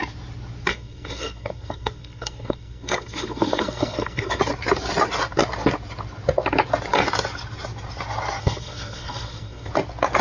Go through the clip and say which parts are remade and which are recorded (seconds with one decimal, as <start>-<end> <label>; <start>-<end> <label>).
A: 0.0-0.7 recorded; 0.7-4.4 remade; 4.4-8.4 recorded; 8.4-9.7 remade; 9.7-10.2 recorded